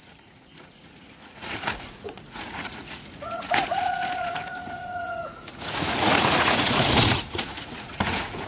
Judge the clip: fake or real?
fake